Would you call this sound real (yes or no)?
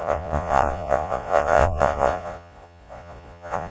no